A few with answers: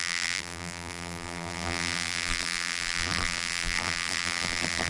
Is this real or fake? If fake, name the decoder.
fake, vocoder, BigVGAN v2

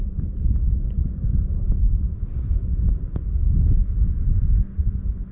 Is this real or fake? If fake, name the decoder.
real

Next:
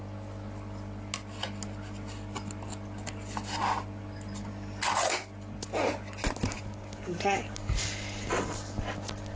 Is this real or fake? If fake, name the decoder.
real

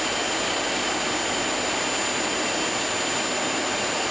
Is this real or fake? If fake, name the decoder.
real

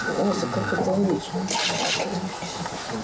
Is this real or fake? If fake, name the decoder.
real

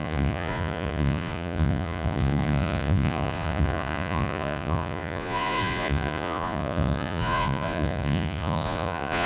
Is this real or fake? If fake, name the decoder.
fake, vocoder, Vocos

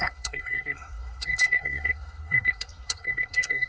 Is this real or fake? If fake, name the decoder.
fake, codec, SNAC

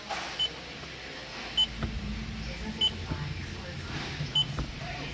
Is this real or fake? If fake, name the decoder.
real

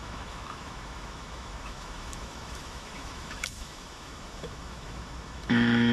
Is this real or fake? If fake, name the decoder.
fake, autoencoder, DAC-VAE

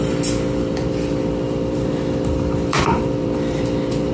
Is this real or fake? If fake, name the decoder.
fake, vocoder, BigVGAN v2